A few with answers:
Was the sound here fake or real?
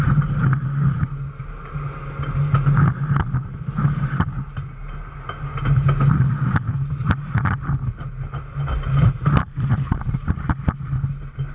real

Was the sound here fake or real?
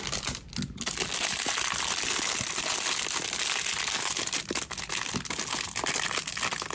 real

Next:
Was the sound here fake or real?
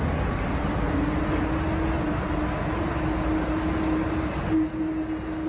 real